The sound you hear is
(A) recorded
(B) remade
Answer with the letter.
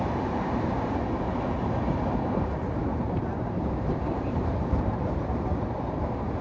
B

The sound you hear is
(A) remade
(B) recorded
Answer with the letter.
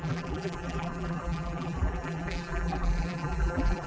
A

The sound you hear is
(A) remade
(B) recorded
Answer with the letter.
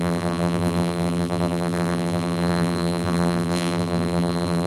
A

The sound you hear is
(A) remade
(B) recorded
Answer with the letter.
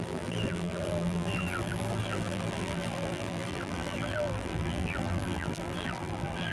A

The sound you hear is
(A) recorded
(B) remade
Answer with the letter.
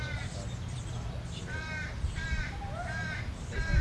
A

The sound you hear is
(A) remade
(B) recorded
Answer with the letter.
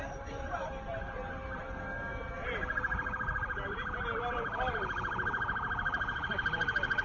A